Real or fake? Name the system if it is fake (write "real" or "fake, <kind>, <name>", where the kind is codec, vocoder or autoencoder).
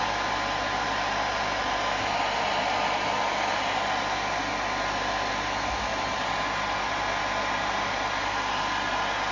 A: real